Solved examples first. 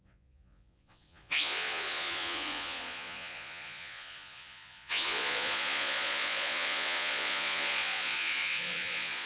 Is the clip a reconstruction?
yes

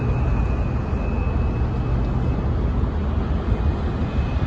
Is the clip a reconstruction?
no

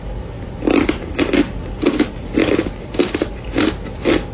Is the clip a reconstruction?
no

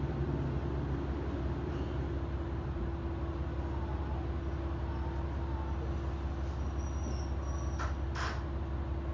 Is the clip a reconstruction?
no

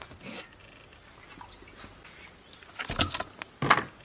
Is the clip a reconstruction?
no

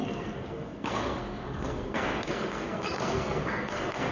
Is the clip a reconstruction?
yes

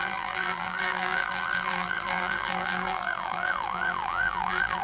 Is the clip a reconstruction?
yes